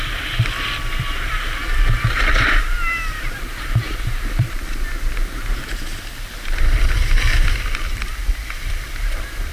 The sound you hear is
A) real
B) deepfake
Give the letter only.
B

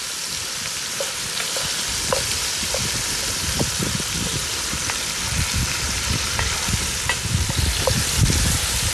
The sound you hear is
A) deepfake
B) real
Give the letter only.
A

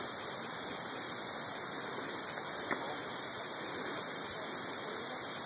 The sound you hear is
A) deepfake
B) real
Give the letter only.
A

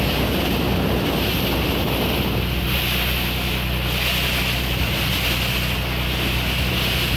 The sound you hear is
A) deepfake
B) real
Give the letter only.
B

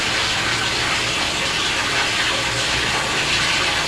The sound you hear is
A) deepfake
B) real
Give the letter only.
B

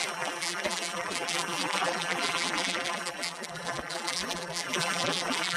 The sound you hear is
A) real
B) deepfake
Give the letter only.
B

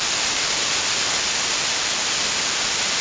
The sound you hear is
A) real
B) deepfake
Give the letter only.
A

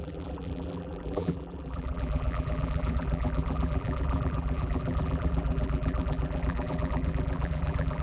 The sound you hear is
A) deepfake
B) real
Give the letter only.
A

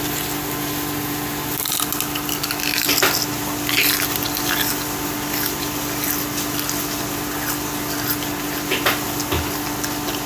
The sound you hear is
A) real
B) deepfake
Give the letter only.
A